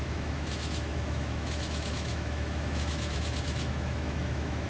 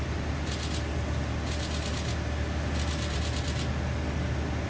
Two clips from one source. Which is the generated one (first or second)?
first